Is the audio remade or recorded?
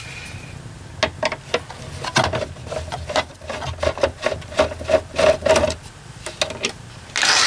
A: recorded